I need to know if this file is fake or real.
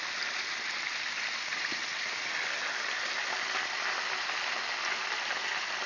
real